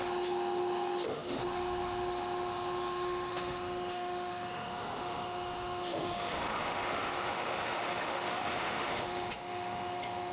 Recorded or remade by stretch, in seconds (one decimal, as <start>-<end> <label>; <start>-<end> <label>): 0.0-10.3 remade